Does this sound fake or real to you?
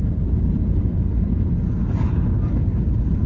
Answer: real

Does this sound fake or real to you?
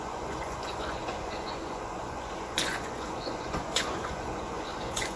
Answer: fake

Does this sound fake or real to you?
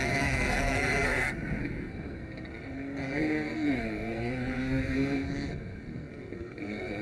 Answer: fake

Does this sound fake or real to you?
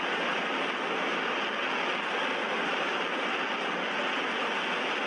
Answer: real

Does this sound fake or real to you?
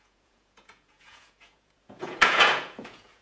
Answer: fake